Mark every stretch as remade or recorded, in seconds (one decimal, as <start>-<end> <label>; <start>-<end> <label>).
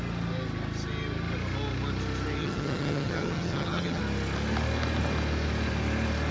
0.0-2.4 recorded; 2.4-4.0 remade; 4.0-6.3 recorded